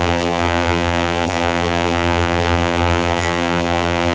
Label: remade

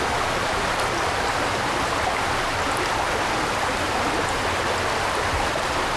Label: recorded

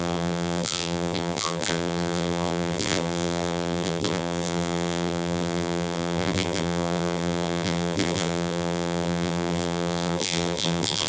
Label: remade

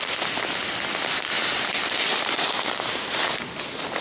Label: remade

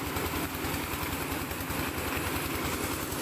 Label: recorded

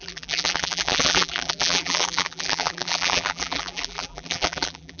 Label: remade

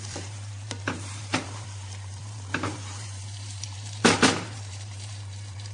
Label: remade